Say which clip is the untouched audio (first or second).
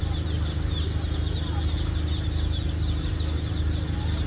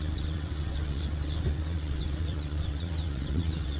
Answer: first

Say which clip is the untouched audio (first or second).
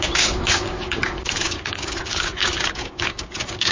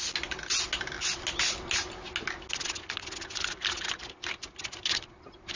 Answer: second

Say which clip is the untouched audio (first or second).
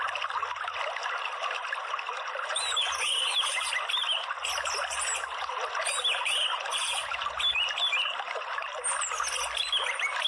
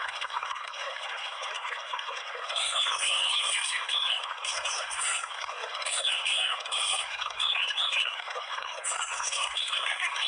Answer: first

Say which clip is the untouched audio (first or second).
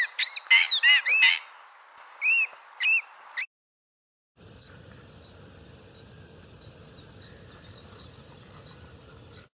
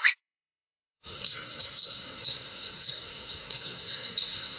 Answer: first